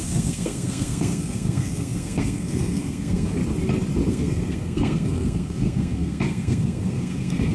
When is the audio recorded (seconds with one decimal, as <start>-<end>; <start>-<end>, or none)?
3.4-4.1